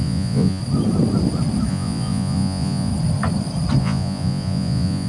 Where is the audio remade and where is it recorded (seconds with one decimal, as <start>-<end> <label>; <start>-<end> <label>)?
0.0-0.6 remade; 0.6-1.7 recorded; 1.7-2.9 remade; 2.9-3.8 recorded; 3.8-5.1 remade